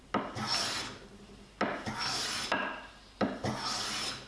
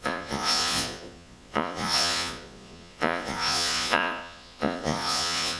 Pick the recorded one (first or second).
first